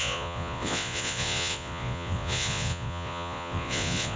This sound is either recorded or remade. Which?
remade